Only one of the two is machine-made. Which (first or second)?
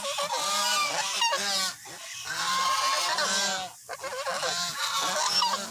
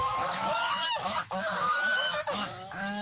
second